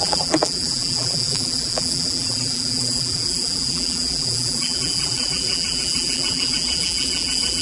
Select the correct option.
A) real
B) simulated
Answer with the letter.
B